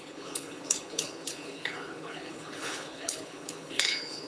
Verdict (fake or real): fake